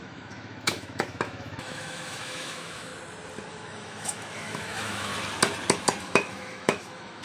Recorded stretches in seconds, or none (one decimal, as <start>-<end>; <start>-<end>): 2.9-3.5; 5.1-6.0